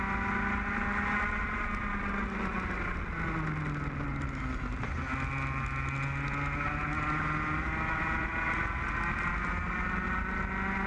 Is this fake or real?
real